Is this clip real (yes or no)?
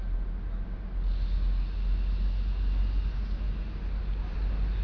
yes